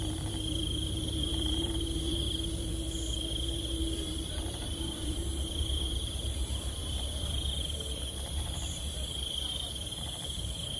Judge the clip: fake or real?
fake